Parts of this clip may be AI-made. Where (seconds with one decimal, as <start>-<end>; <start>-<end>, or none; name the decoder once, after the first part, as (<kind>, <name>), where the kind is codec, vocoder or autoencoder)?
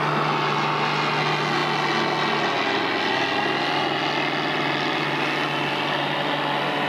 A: none